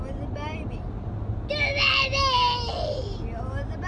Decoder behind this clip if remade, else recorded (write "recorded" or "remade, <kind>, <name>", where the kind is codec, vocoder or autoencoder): recorded